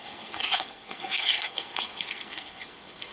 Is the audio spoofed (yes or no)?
yes